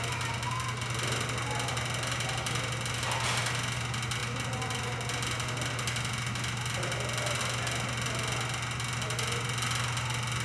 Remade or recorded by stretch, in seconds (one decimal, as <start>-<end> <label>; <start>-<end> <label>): 0.0-10.4 recorded